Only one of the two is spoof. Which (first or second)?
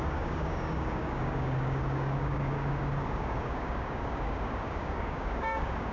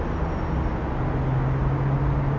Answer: first